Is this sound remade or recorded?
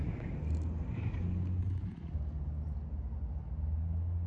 recorded